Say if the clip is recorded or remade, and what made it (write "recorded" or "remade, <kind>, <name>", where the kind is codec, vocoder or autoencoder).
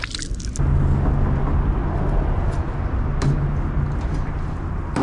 recorded